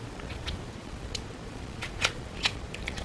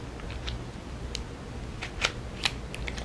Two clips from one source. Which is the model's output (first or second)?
first